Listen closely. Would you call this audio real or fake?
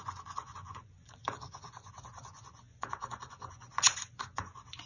fake